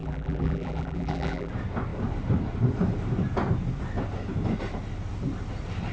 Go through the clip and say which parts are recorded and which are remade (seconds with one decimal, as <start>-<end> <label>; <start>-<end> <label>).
0.0-1.5 remade; 1.5-5.9 recorded